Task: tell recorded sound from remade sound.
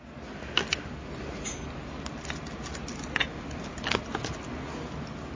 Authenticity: recorded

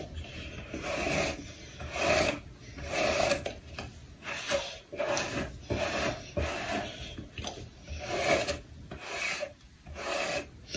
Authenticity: recorded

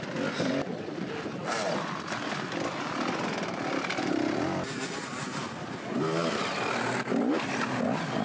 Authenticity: recorded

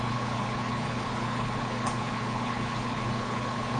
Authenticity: remade